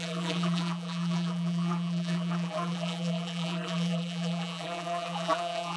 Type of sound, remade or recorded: remade